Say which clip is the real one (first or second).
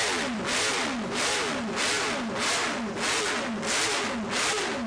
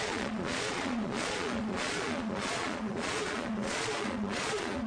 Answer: first